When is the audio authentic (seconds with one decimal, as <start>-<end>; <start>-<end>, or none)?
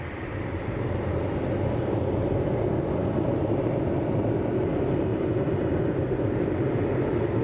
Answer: 0.0-7.4